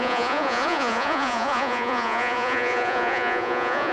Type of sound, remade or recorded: remade